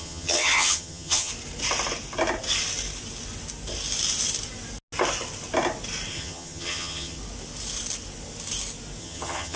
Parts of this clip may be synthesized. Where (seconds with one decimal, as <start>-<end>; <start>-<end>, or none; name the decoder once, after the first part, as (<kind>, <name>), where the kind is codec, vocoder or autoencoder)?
0.0-1.3 (vocoder, HiFi-GAN); 6.1-7.2; 9.0-9.6